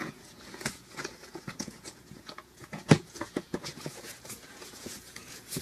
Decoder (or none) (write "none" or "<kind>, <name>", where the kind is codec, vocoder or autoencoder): vocoder, Vocos